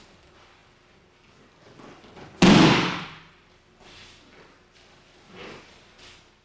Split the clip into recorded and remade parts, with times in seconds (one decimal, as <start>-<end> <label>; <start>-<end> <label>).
0.0-6.4 recorded